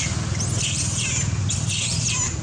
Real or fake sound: real